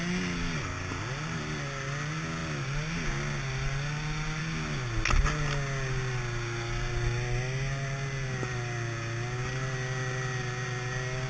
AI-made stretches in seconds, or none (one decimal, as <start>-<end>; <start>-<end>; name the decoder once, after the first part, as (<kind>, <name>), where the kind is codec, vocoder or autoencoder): none

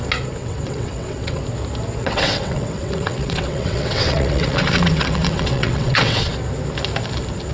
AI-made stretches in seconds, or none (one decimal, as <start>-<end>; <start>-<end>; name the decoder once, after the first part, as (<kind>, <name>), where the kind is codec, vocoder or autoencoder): 0.4-1.4 (vocoder, WaveNeXt); 2.0-6.3

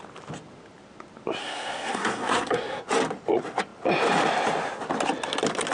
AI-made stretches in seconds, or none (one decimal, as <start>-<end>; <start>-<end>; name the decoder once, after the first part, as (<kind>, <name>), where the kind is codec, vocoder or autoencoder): 1.4-2.8 (codec, SNAC)

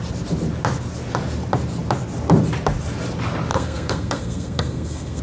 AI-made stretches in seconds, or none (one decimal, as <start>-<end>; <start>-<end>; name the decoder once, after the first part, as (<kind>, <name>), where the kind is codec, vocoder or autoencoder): 3.5-5.2 (codec, SNAC)

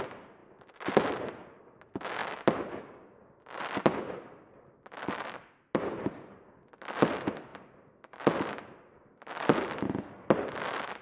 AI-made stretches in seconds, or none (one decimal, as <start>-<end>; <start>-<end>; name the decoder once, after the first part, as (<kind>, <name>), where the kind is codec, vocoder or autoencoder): none

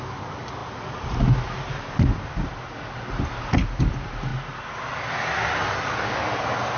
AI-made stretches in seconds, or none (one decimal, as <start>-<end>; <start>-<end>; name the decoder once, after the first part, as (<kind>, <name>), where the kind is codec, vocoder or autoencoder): none

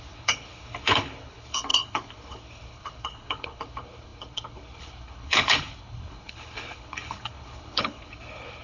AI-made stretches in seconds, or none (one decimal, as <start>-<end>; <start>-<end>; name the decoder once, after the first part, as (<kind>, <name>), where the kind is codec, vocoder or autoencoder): 0.0-8.6 (codec, HILCodec)

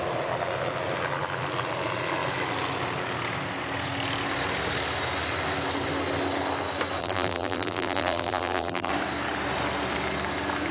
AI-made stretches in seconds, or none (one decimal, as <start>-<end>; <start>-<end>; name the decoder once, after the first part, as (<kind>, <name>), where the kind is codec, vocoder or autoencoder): 7.0-8.9 (vocoder, BigVGAN v2)